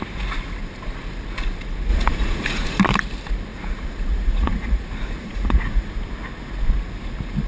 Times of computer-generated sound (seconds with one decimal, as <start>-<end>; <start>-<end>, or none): 1.9-2.8; 3.5-5.9